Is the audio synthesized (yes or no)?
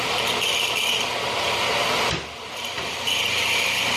no